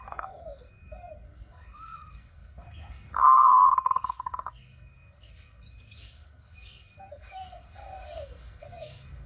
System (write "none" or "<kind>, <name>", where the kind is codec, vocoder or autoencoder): codec, SNAC